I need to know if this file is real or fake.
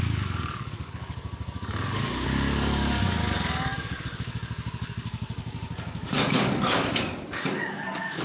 fake